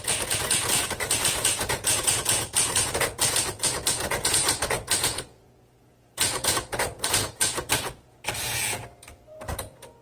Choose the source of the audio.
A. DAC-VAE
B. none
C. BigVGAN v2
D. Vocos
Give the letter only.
D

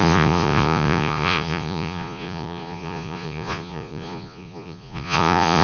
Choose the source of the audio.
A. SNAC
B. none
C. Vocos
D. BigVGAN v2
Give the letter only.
C